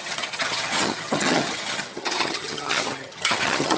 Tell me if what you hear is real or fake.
fake